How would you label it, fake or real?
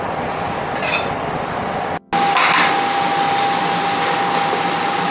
real